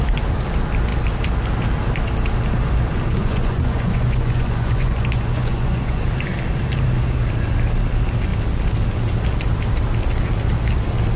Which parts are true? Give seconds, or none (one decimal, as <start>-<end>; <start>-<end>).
0.0-3.2; 6.0-11.2